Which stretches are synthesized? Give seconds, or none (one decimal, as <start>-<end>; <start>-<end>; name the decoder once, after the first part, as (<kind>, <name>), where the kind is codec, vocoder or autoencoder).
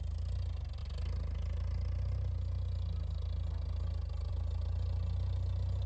none